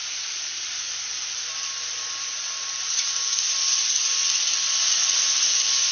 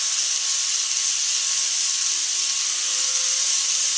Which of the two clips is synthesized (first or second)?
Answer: first